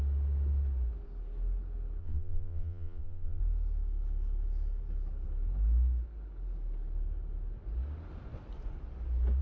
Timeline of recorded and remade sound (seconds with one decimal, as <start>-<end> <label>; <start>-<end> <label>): 0.0-2.0 recorded; 2.0-3.4 remade; 3.4-9.4 recorded